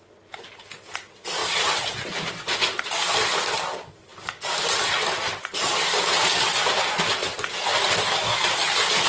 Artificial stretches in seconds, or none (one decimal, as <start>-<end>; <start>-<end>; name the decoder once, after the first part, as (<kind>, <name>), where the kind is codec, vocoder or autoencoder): none